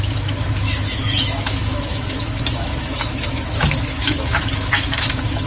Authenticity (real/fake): fake